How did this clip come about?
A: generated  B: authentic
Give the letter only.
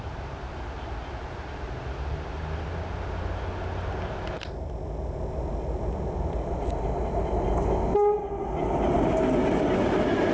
B